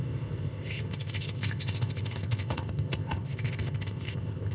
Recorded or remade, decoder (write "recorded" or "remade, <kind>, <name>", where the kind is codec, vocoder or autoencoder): remade, codec, ZipCodec